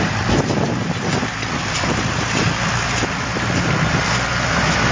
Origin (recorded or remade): remade